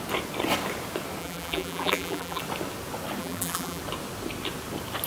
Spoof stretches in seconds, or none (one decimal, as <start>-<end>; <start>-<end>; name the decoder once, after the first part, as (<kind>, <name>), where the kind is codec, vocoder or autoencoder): 1.2-2.4 (vocoder, BigVGAN v2); 3.2-3.8